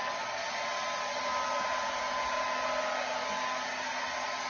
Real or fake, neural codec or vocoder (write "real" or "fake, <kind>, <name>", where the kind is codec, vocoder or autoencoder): real